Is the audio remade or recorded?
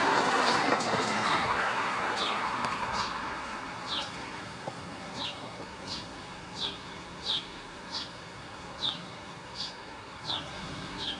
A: remade